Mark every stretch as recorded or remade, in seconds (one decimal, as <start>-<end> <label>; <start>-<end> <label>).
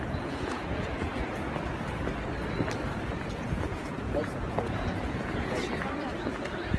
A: 0.0-1.2 remade; 1.2-3.2 recorded; 3.2-5.6 remade; 5.6-6.2 recorded; 6.2-6.8 remade